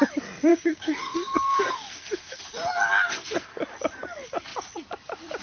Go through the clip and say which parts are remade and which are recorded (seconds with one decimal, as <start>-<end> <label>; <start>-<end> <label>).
0.0-0.5 recorded; 0.5-2.4 remade; 2.4-3.1 recorded; 3.1-3.6 remade; 3.6-5.4 recorded